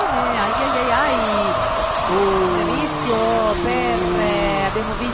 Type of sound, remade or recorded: recorded